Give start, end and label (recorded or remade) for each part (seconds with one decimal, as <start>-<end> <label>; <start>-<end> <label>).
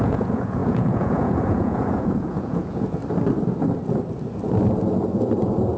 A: 0.0-3.0 remade; 3.0-5.8 recorded